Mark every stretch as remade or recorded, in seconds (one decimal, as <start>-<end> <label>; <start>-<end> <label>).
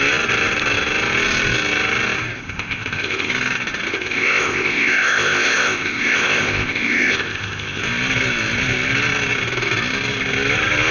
0.0-2.4 recorded; 2.4-3.3 remade; 3.3-3.9 recorded; 3.9-7.8 remade; 7.8-10.9 recorded